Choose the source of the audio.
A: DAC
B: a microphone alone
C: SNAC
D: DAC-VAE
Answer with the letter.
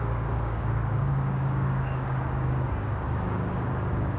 A